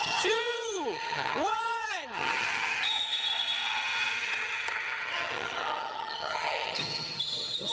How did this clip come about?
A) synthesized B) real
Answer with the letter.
A